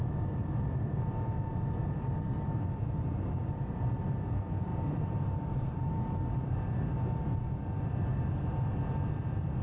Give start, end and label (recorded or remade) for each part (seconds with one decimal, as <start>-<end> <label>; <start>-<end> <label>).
0.0-4.7 recorded; 4.7-5.9 remade; 5.9-9.6 recorded